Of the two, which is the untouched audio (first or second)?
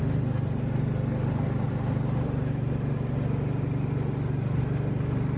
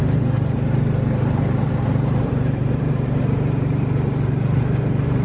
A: first